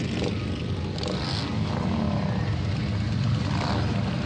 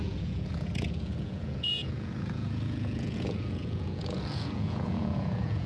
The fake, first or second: second